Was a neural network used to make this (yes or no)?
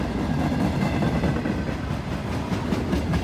no